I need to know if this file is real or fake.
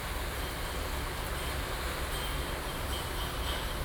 real